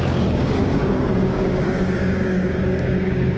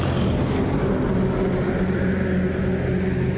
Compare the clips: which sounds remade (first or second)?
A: first